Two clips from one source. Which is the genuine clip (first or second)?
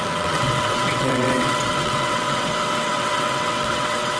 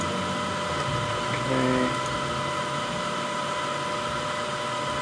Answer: second